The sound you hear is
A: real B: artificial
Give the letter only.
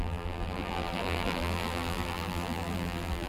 B